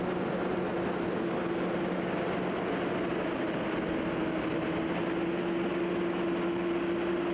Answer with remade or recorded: recorded